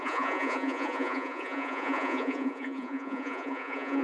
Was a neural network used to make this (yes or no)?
yes